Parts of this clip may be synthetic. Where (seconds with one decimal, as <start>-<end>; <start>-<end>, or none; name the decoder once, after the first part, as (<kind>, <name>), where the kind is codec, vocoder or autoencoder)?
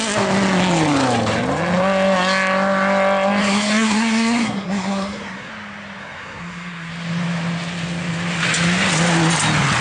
3.4-5.5 (codec, SNAC); 6.0-6.9